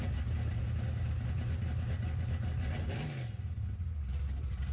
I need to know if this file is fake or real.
real